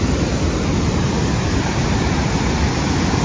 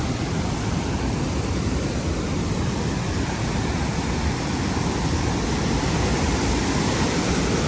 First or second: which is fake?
second